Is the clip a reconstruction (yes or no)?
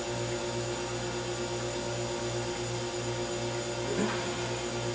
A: no